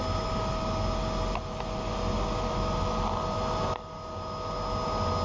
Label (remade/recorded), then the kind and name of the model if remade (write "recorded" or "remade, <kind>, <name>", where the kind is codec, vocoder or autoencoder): recorded